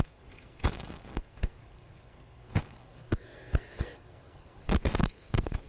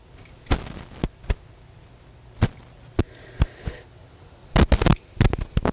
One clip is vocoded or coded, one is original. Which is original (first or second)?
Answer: second